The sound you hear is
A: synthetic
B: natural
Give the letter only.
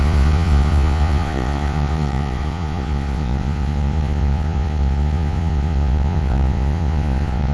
A